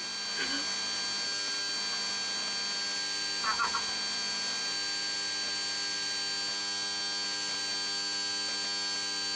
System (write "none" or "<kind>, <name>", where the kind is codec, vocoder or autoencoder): none